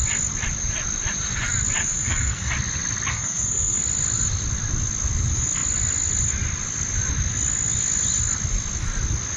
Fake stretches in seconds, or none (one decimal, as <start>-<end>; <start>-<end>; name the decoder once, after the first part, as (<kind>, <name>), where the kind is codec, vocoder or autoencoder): 1.8-2.5 (codec, SNAC); 3.1-3.8